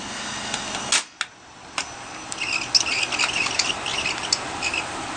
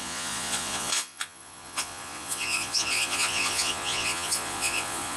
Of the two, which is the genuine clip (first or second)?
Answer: first